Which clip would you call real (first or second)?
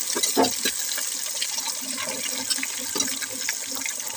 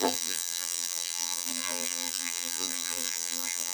first